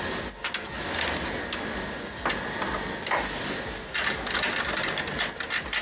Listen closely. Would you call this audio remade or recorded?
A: recorded